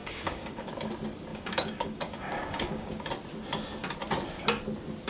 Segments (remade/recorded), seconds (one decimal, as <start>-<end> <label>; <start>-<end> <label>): 0.0-0.7 remade; 0.7-1.3 recorded; 1.3-3.1 remade; 3.1-5.1 recorded